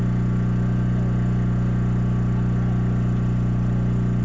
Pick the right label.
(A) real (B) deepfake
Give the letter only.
A